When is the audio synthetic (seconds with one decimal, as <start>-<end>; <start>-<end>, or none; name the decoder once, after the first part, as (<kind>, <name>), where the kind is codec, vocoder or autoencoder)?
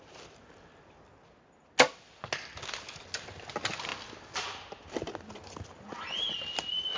none